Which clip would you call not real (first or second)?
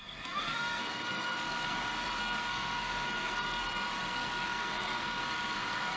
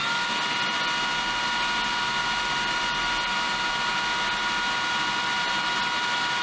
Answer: first